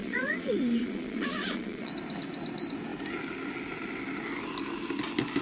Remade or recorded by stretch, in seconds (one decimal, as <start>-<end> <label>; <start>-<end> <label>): 0.0-1.9 remade; 1.9-5.4 recorded